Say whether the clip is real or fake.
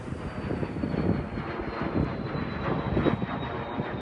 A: real